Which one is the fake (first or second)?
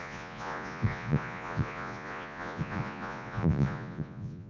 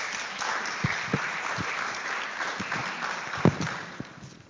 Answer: first